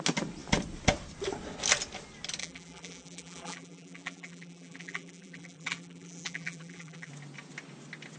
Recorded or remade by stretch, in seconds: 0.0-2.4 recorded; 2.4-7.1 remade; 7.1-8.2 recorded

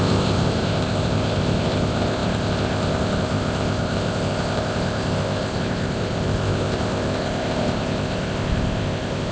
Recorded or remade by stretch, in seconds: 0.0-9.3 remade

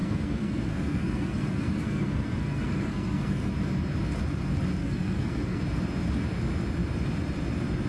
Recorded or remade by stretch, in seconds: 0.0-3.5 remade; 3.5-4.8 recorded; 4.8-5.6 remade; 5.6-7.9 recorded

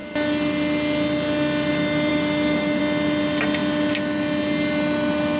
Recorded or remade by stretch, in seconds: 0.0-2.1 recorded; 2.1-2.8 remade; 2.8-5.4 recorded

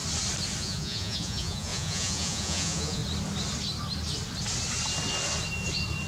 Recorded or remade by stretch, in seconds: 0.0-0.6 recorded; 0.6-3.0 remade; 3.0-6.1 recorded

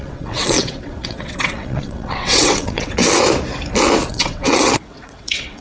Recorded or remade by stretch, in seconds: 0.0-3.0 remade; 3.0-4.1 recorded; 4.1-5.6 remade

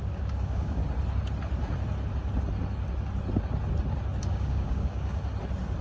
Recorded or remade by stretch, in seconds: 0.0-0.8 remade; 0.8-4.3 recorded; 4.3-5.2 remade; 5.2-5.8 recorded

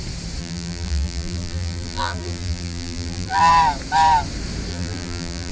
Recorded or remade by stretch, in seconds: 0.0-0.4 recorded; 0.4-3.5 remade; 3.5-4.7 recorded; 4.7-5.5 remade